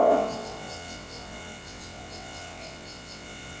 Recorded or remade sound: remade